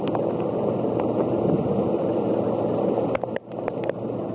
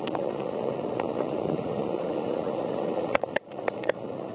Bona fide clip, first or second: first